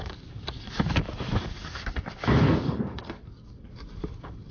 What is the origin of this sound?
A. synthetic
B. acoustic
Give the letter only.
A